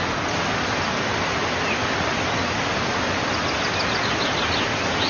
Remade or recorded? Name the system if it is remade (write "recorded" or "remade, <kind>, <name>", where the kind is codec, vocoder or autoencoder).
recorded